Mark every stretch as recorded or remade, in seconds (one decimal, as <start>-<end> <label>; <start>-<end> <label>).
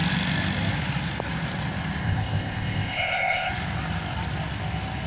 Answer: 0.0-2.0 recorded; 2.0-3.5 remade; 3.5-5.1 recorded